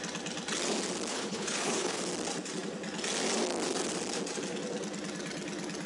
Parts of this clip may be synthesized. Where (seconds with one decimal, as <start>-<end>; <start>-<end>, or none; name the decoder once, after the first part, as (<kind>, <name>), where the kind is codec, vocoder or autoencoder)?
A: 1.1-2.0 (codec, HILCodec)